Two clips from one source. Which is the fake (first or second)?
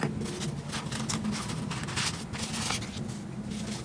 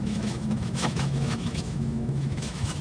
second